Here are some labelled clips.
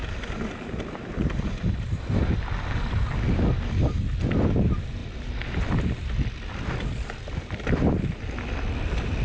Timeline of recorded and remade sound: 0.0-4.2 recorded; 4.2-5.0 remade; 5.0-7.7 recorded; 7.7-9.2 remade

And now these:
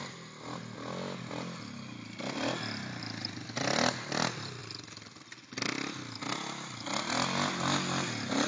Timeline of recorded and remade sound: 0.0-8.5 recorded

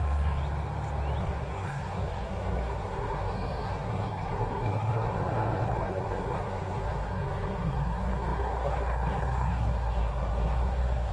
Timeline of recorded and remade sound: 0.0-0.4 remade; 0.4-1.2 recorded; 1.2-11.1 remade

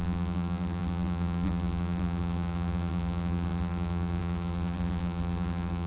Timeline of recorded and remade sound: 0.0-5.9 remade

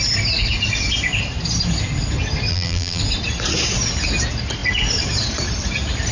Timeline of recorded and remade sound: 0.0-2.5 recorded; 2.5-3.0 remade; 3.0-6.1 recorded

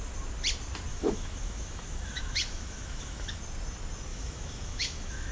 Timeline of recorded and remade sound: 0.0-0.9 recorded; 0.9-3.4 remade; 3.4-4.1 recorded; 4.1-5.3 remade

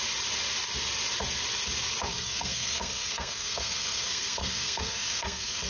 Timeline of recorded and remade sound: 0.0-2.1 recorded; 2.1-5.7 remade